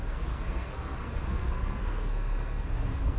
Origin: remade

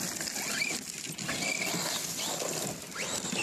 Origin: recorded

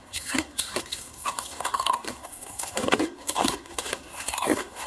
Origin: remade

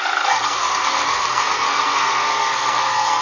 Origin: remade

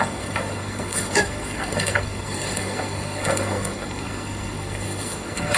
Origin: remade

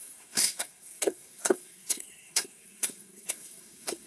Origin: remade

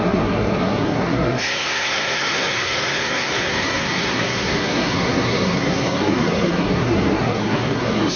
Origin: remade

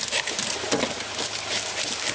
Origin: recorded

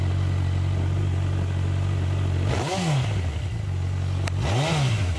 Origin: recorded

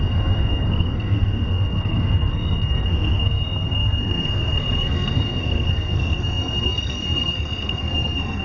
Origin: remade